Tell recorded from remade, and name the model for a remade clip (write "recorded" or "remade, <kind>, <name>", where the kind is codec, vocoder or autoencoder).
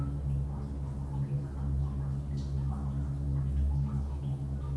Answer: recorded